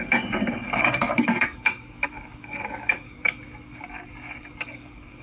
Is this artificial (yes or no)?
yes